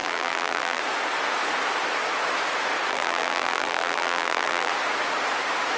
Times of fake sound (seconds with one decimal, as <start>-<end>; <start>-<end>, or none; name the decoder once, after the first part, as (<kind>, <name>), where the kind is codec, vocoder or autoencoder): 0.0-0.8 (vocoder, BigVGAN v2); 2.9-4.7